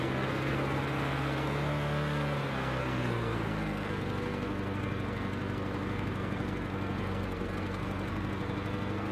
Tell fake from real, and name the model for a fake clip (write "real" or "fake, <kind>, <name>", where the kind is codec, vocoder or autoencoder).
fake, codec, SNAC